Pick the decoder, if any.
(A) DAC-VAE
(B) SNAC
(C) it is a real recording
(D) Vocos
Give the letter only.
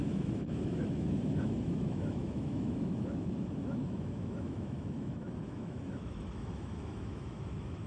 A